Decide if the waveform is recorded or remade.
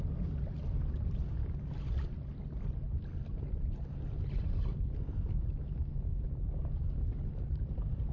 recorded